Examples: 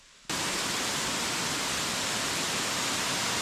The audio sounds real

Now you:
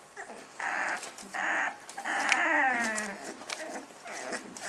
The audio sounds real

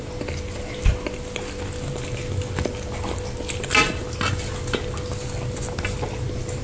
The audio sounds real